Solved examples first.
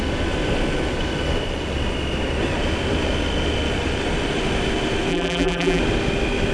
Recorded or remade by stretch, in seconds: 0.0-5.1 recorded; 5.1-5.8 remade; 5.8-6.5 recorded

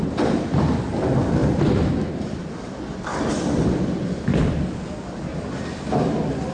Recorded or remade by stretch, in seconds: 0.0-6.5 recorded

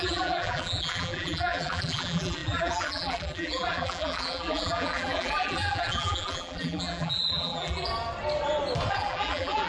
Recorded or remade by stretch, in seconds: 0.0-7.9 remade; 7.9-8.9 recorded; 8.9-9.7 remade

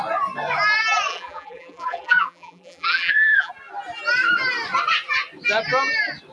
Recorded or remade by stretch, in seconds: 0.0-1.1 recorded; 1.1-3.5 remade; 3.5-6.3 recorded

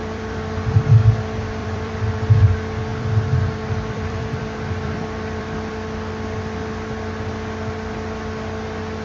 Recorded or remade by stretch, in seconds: 0.0-0.9 remade; 0.9-1.6 recorded; 1.6-2.1 remade; 2.1-2.9 recorded; 2.9-5.7 remade; 5.7-9.0 recorded